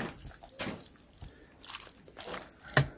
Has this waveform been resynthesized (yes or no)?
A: no